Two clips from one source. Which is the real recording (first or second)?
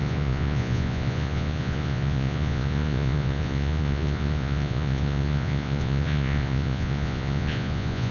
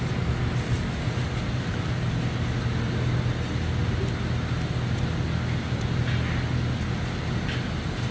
second